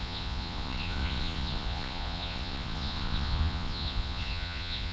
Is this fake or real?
fake